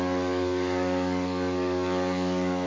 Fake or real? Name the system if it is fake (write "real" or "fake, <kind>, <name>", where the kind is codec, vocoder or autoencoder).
fake, codec, DAC